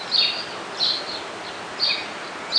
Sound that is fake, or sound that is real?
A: real